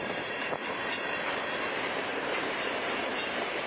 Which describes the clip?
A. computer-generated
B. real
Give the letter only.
A